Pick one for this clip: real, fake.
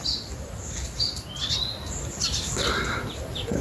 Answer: real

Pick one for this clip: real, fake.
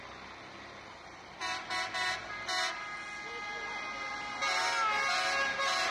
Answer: real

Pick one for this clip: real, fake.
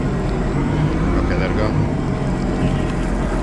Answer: real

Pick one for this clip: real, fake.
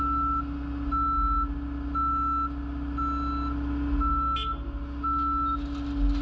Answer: real